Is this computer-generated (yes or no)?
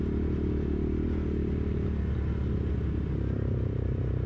no